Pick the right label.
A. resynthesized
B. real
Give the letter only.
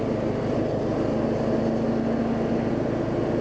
B